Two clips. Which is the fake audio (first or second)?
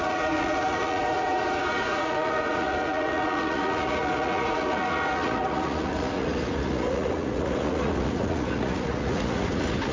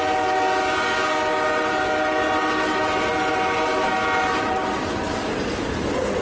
first